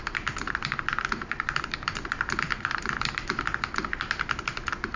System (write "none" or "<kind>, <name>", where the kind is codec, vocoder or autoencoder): vocoder, BigVGAN v2